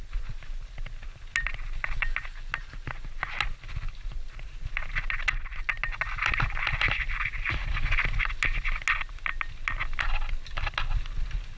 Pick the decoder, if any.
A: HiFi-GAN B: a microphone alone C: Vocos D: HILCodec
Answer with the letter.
B